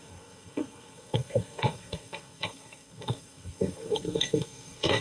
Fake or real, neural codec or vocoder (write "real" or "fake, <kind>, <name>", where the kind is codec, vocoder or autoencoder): fake, codec, SNAC